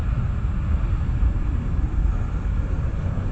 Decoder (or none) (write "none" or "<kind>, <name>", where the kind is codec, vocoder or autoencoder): none